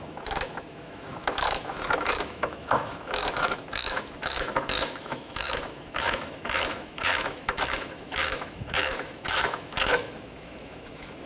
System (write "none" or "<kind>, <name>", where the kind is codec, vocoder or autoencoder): autoencoder, DAC-VAE